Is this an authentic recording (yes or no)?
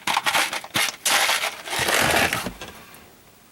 yes